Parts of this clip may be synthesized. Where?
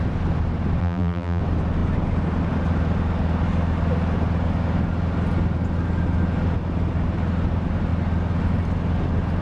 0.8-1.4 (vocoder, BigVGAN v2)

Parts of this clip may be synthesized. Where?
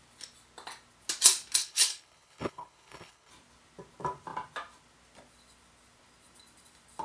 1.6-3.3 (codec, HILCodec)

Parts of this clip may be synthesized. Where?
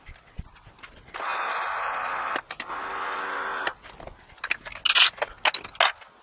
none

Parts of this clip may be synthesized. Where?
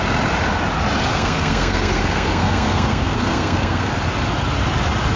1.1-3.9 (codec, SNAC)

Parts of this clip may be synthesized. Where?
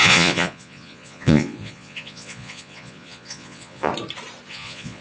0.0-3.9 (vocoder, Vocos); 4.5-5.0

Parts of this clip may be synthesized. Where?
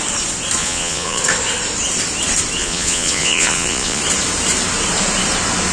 0.6-1.2 (vocoder, Vocos); 2.6-4.0